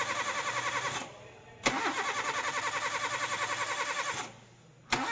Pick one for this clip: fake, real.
real